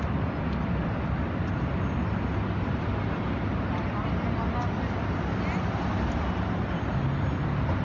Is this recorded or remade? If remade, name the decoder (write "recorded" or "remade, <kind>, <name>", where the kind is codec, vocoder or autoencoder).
recorded